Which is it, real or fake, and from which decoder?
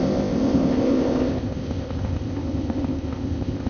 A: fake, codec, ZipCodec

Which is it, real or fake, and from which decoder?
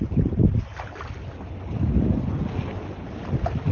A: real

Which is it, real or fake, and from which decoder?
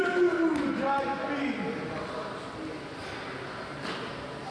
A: real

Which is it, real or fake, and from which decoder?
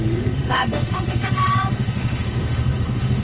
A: fake, autoencoder, DAC-VAE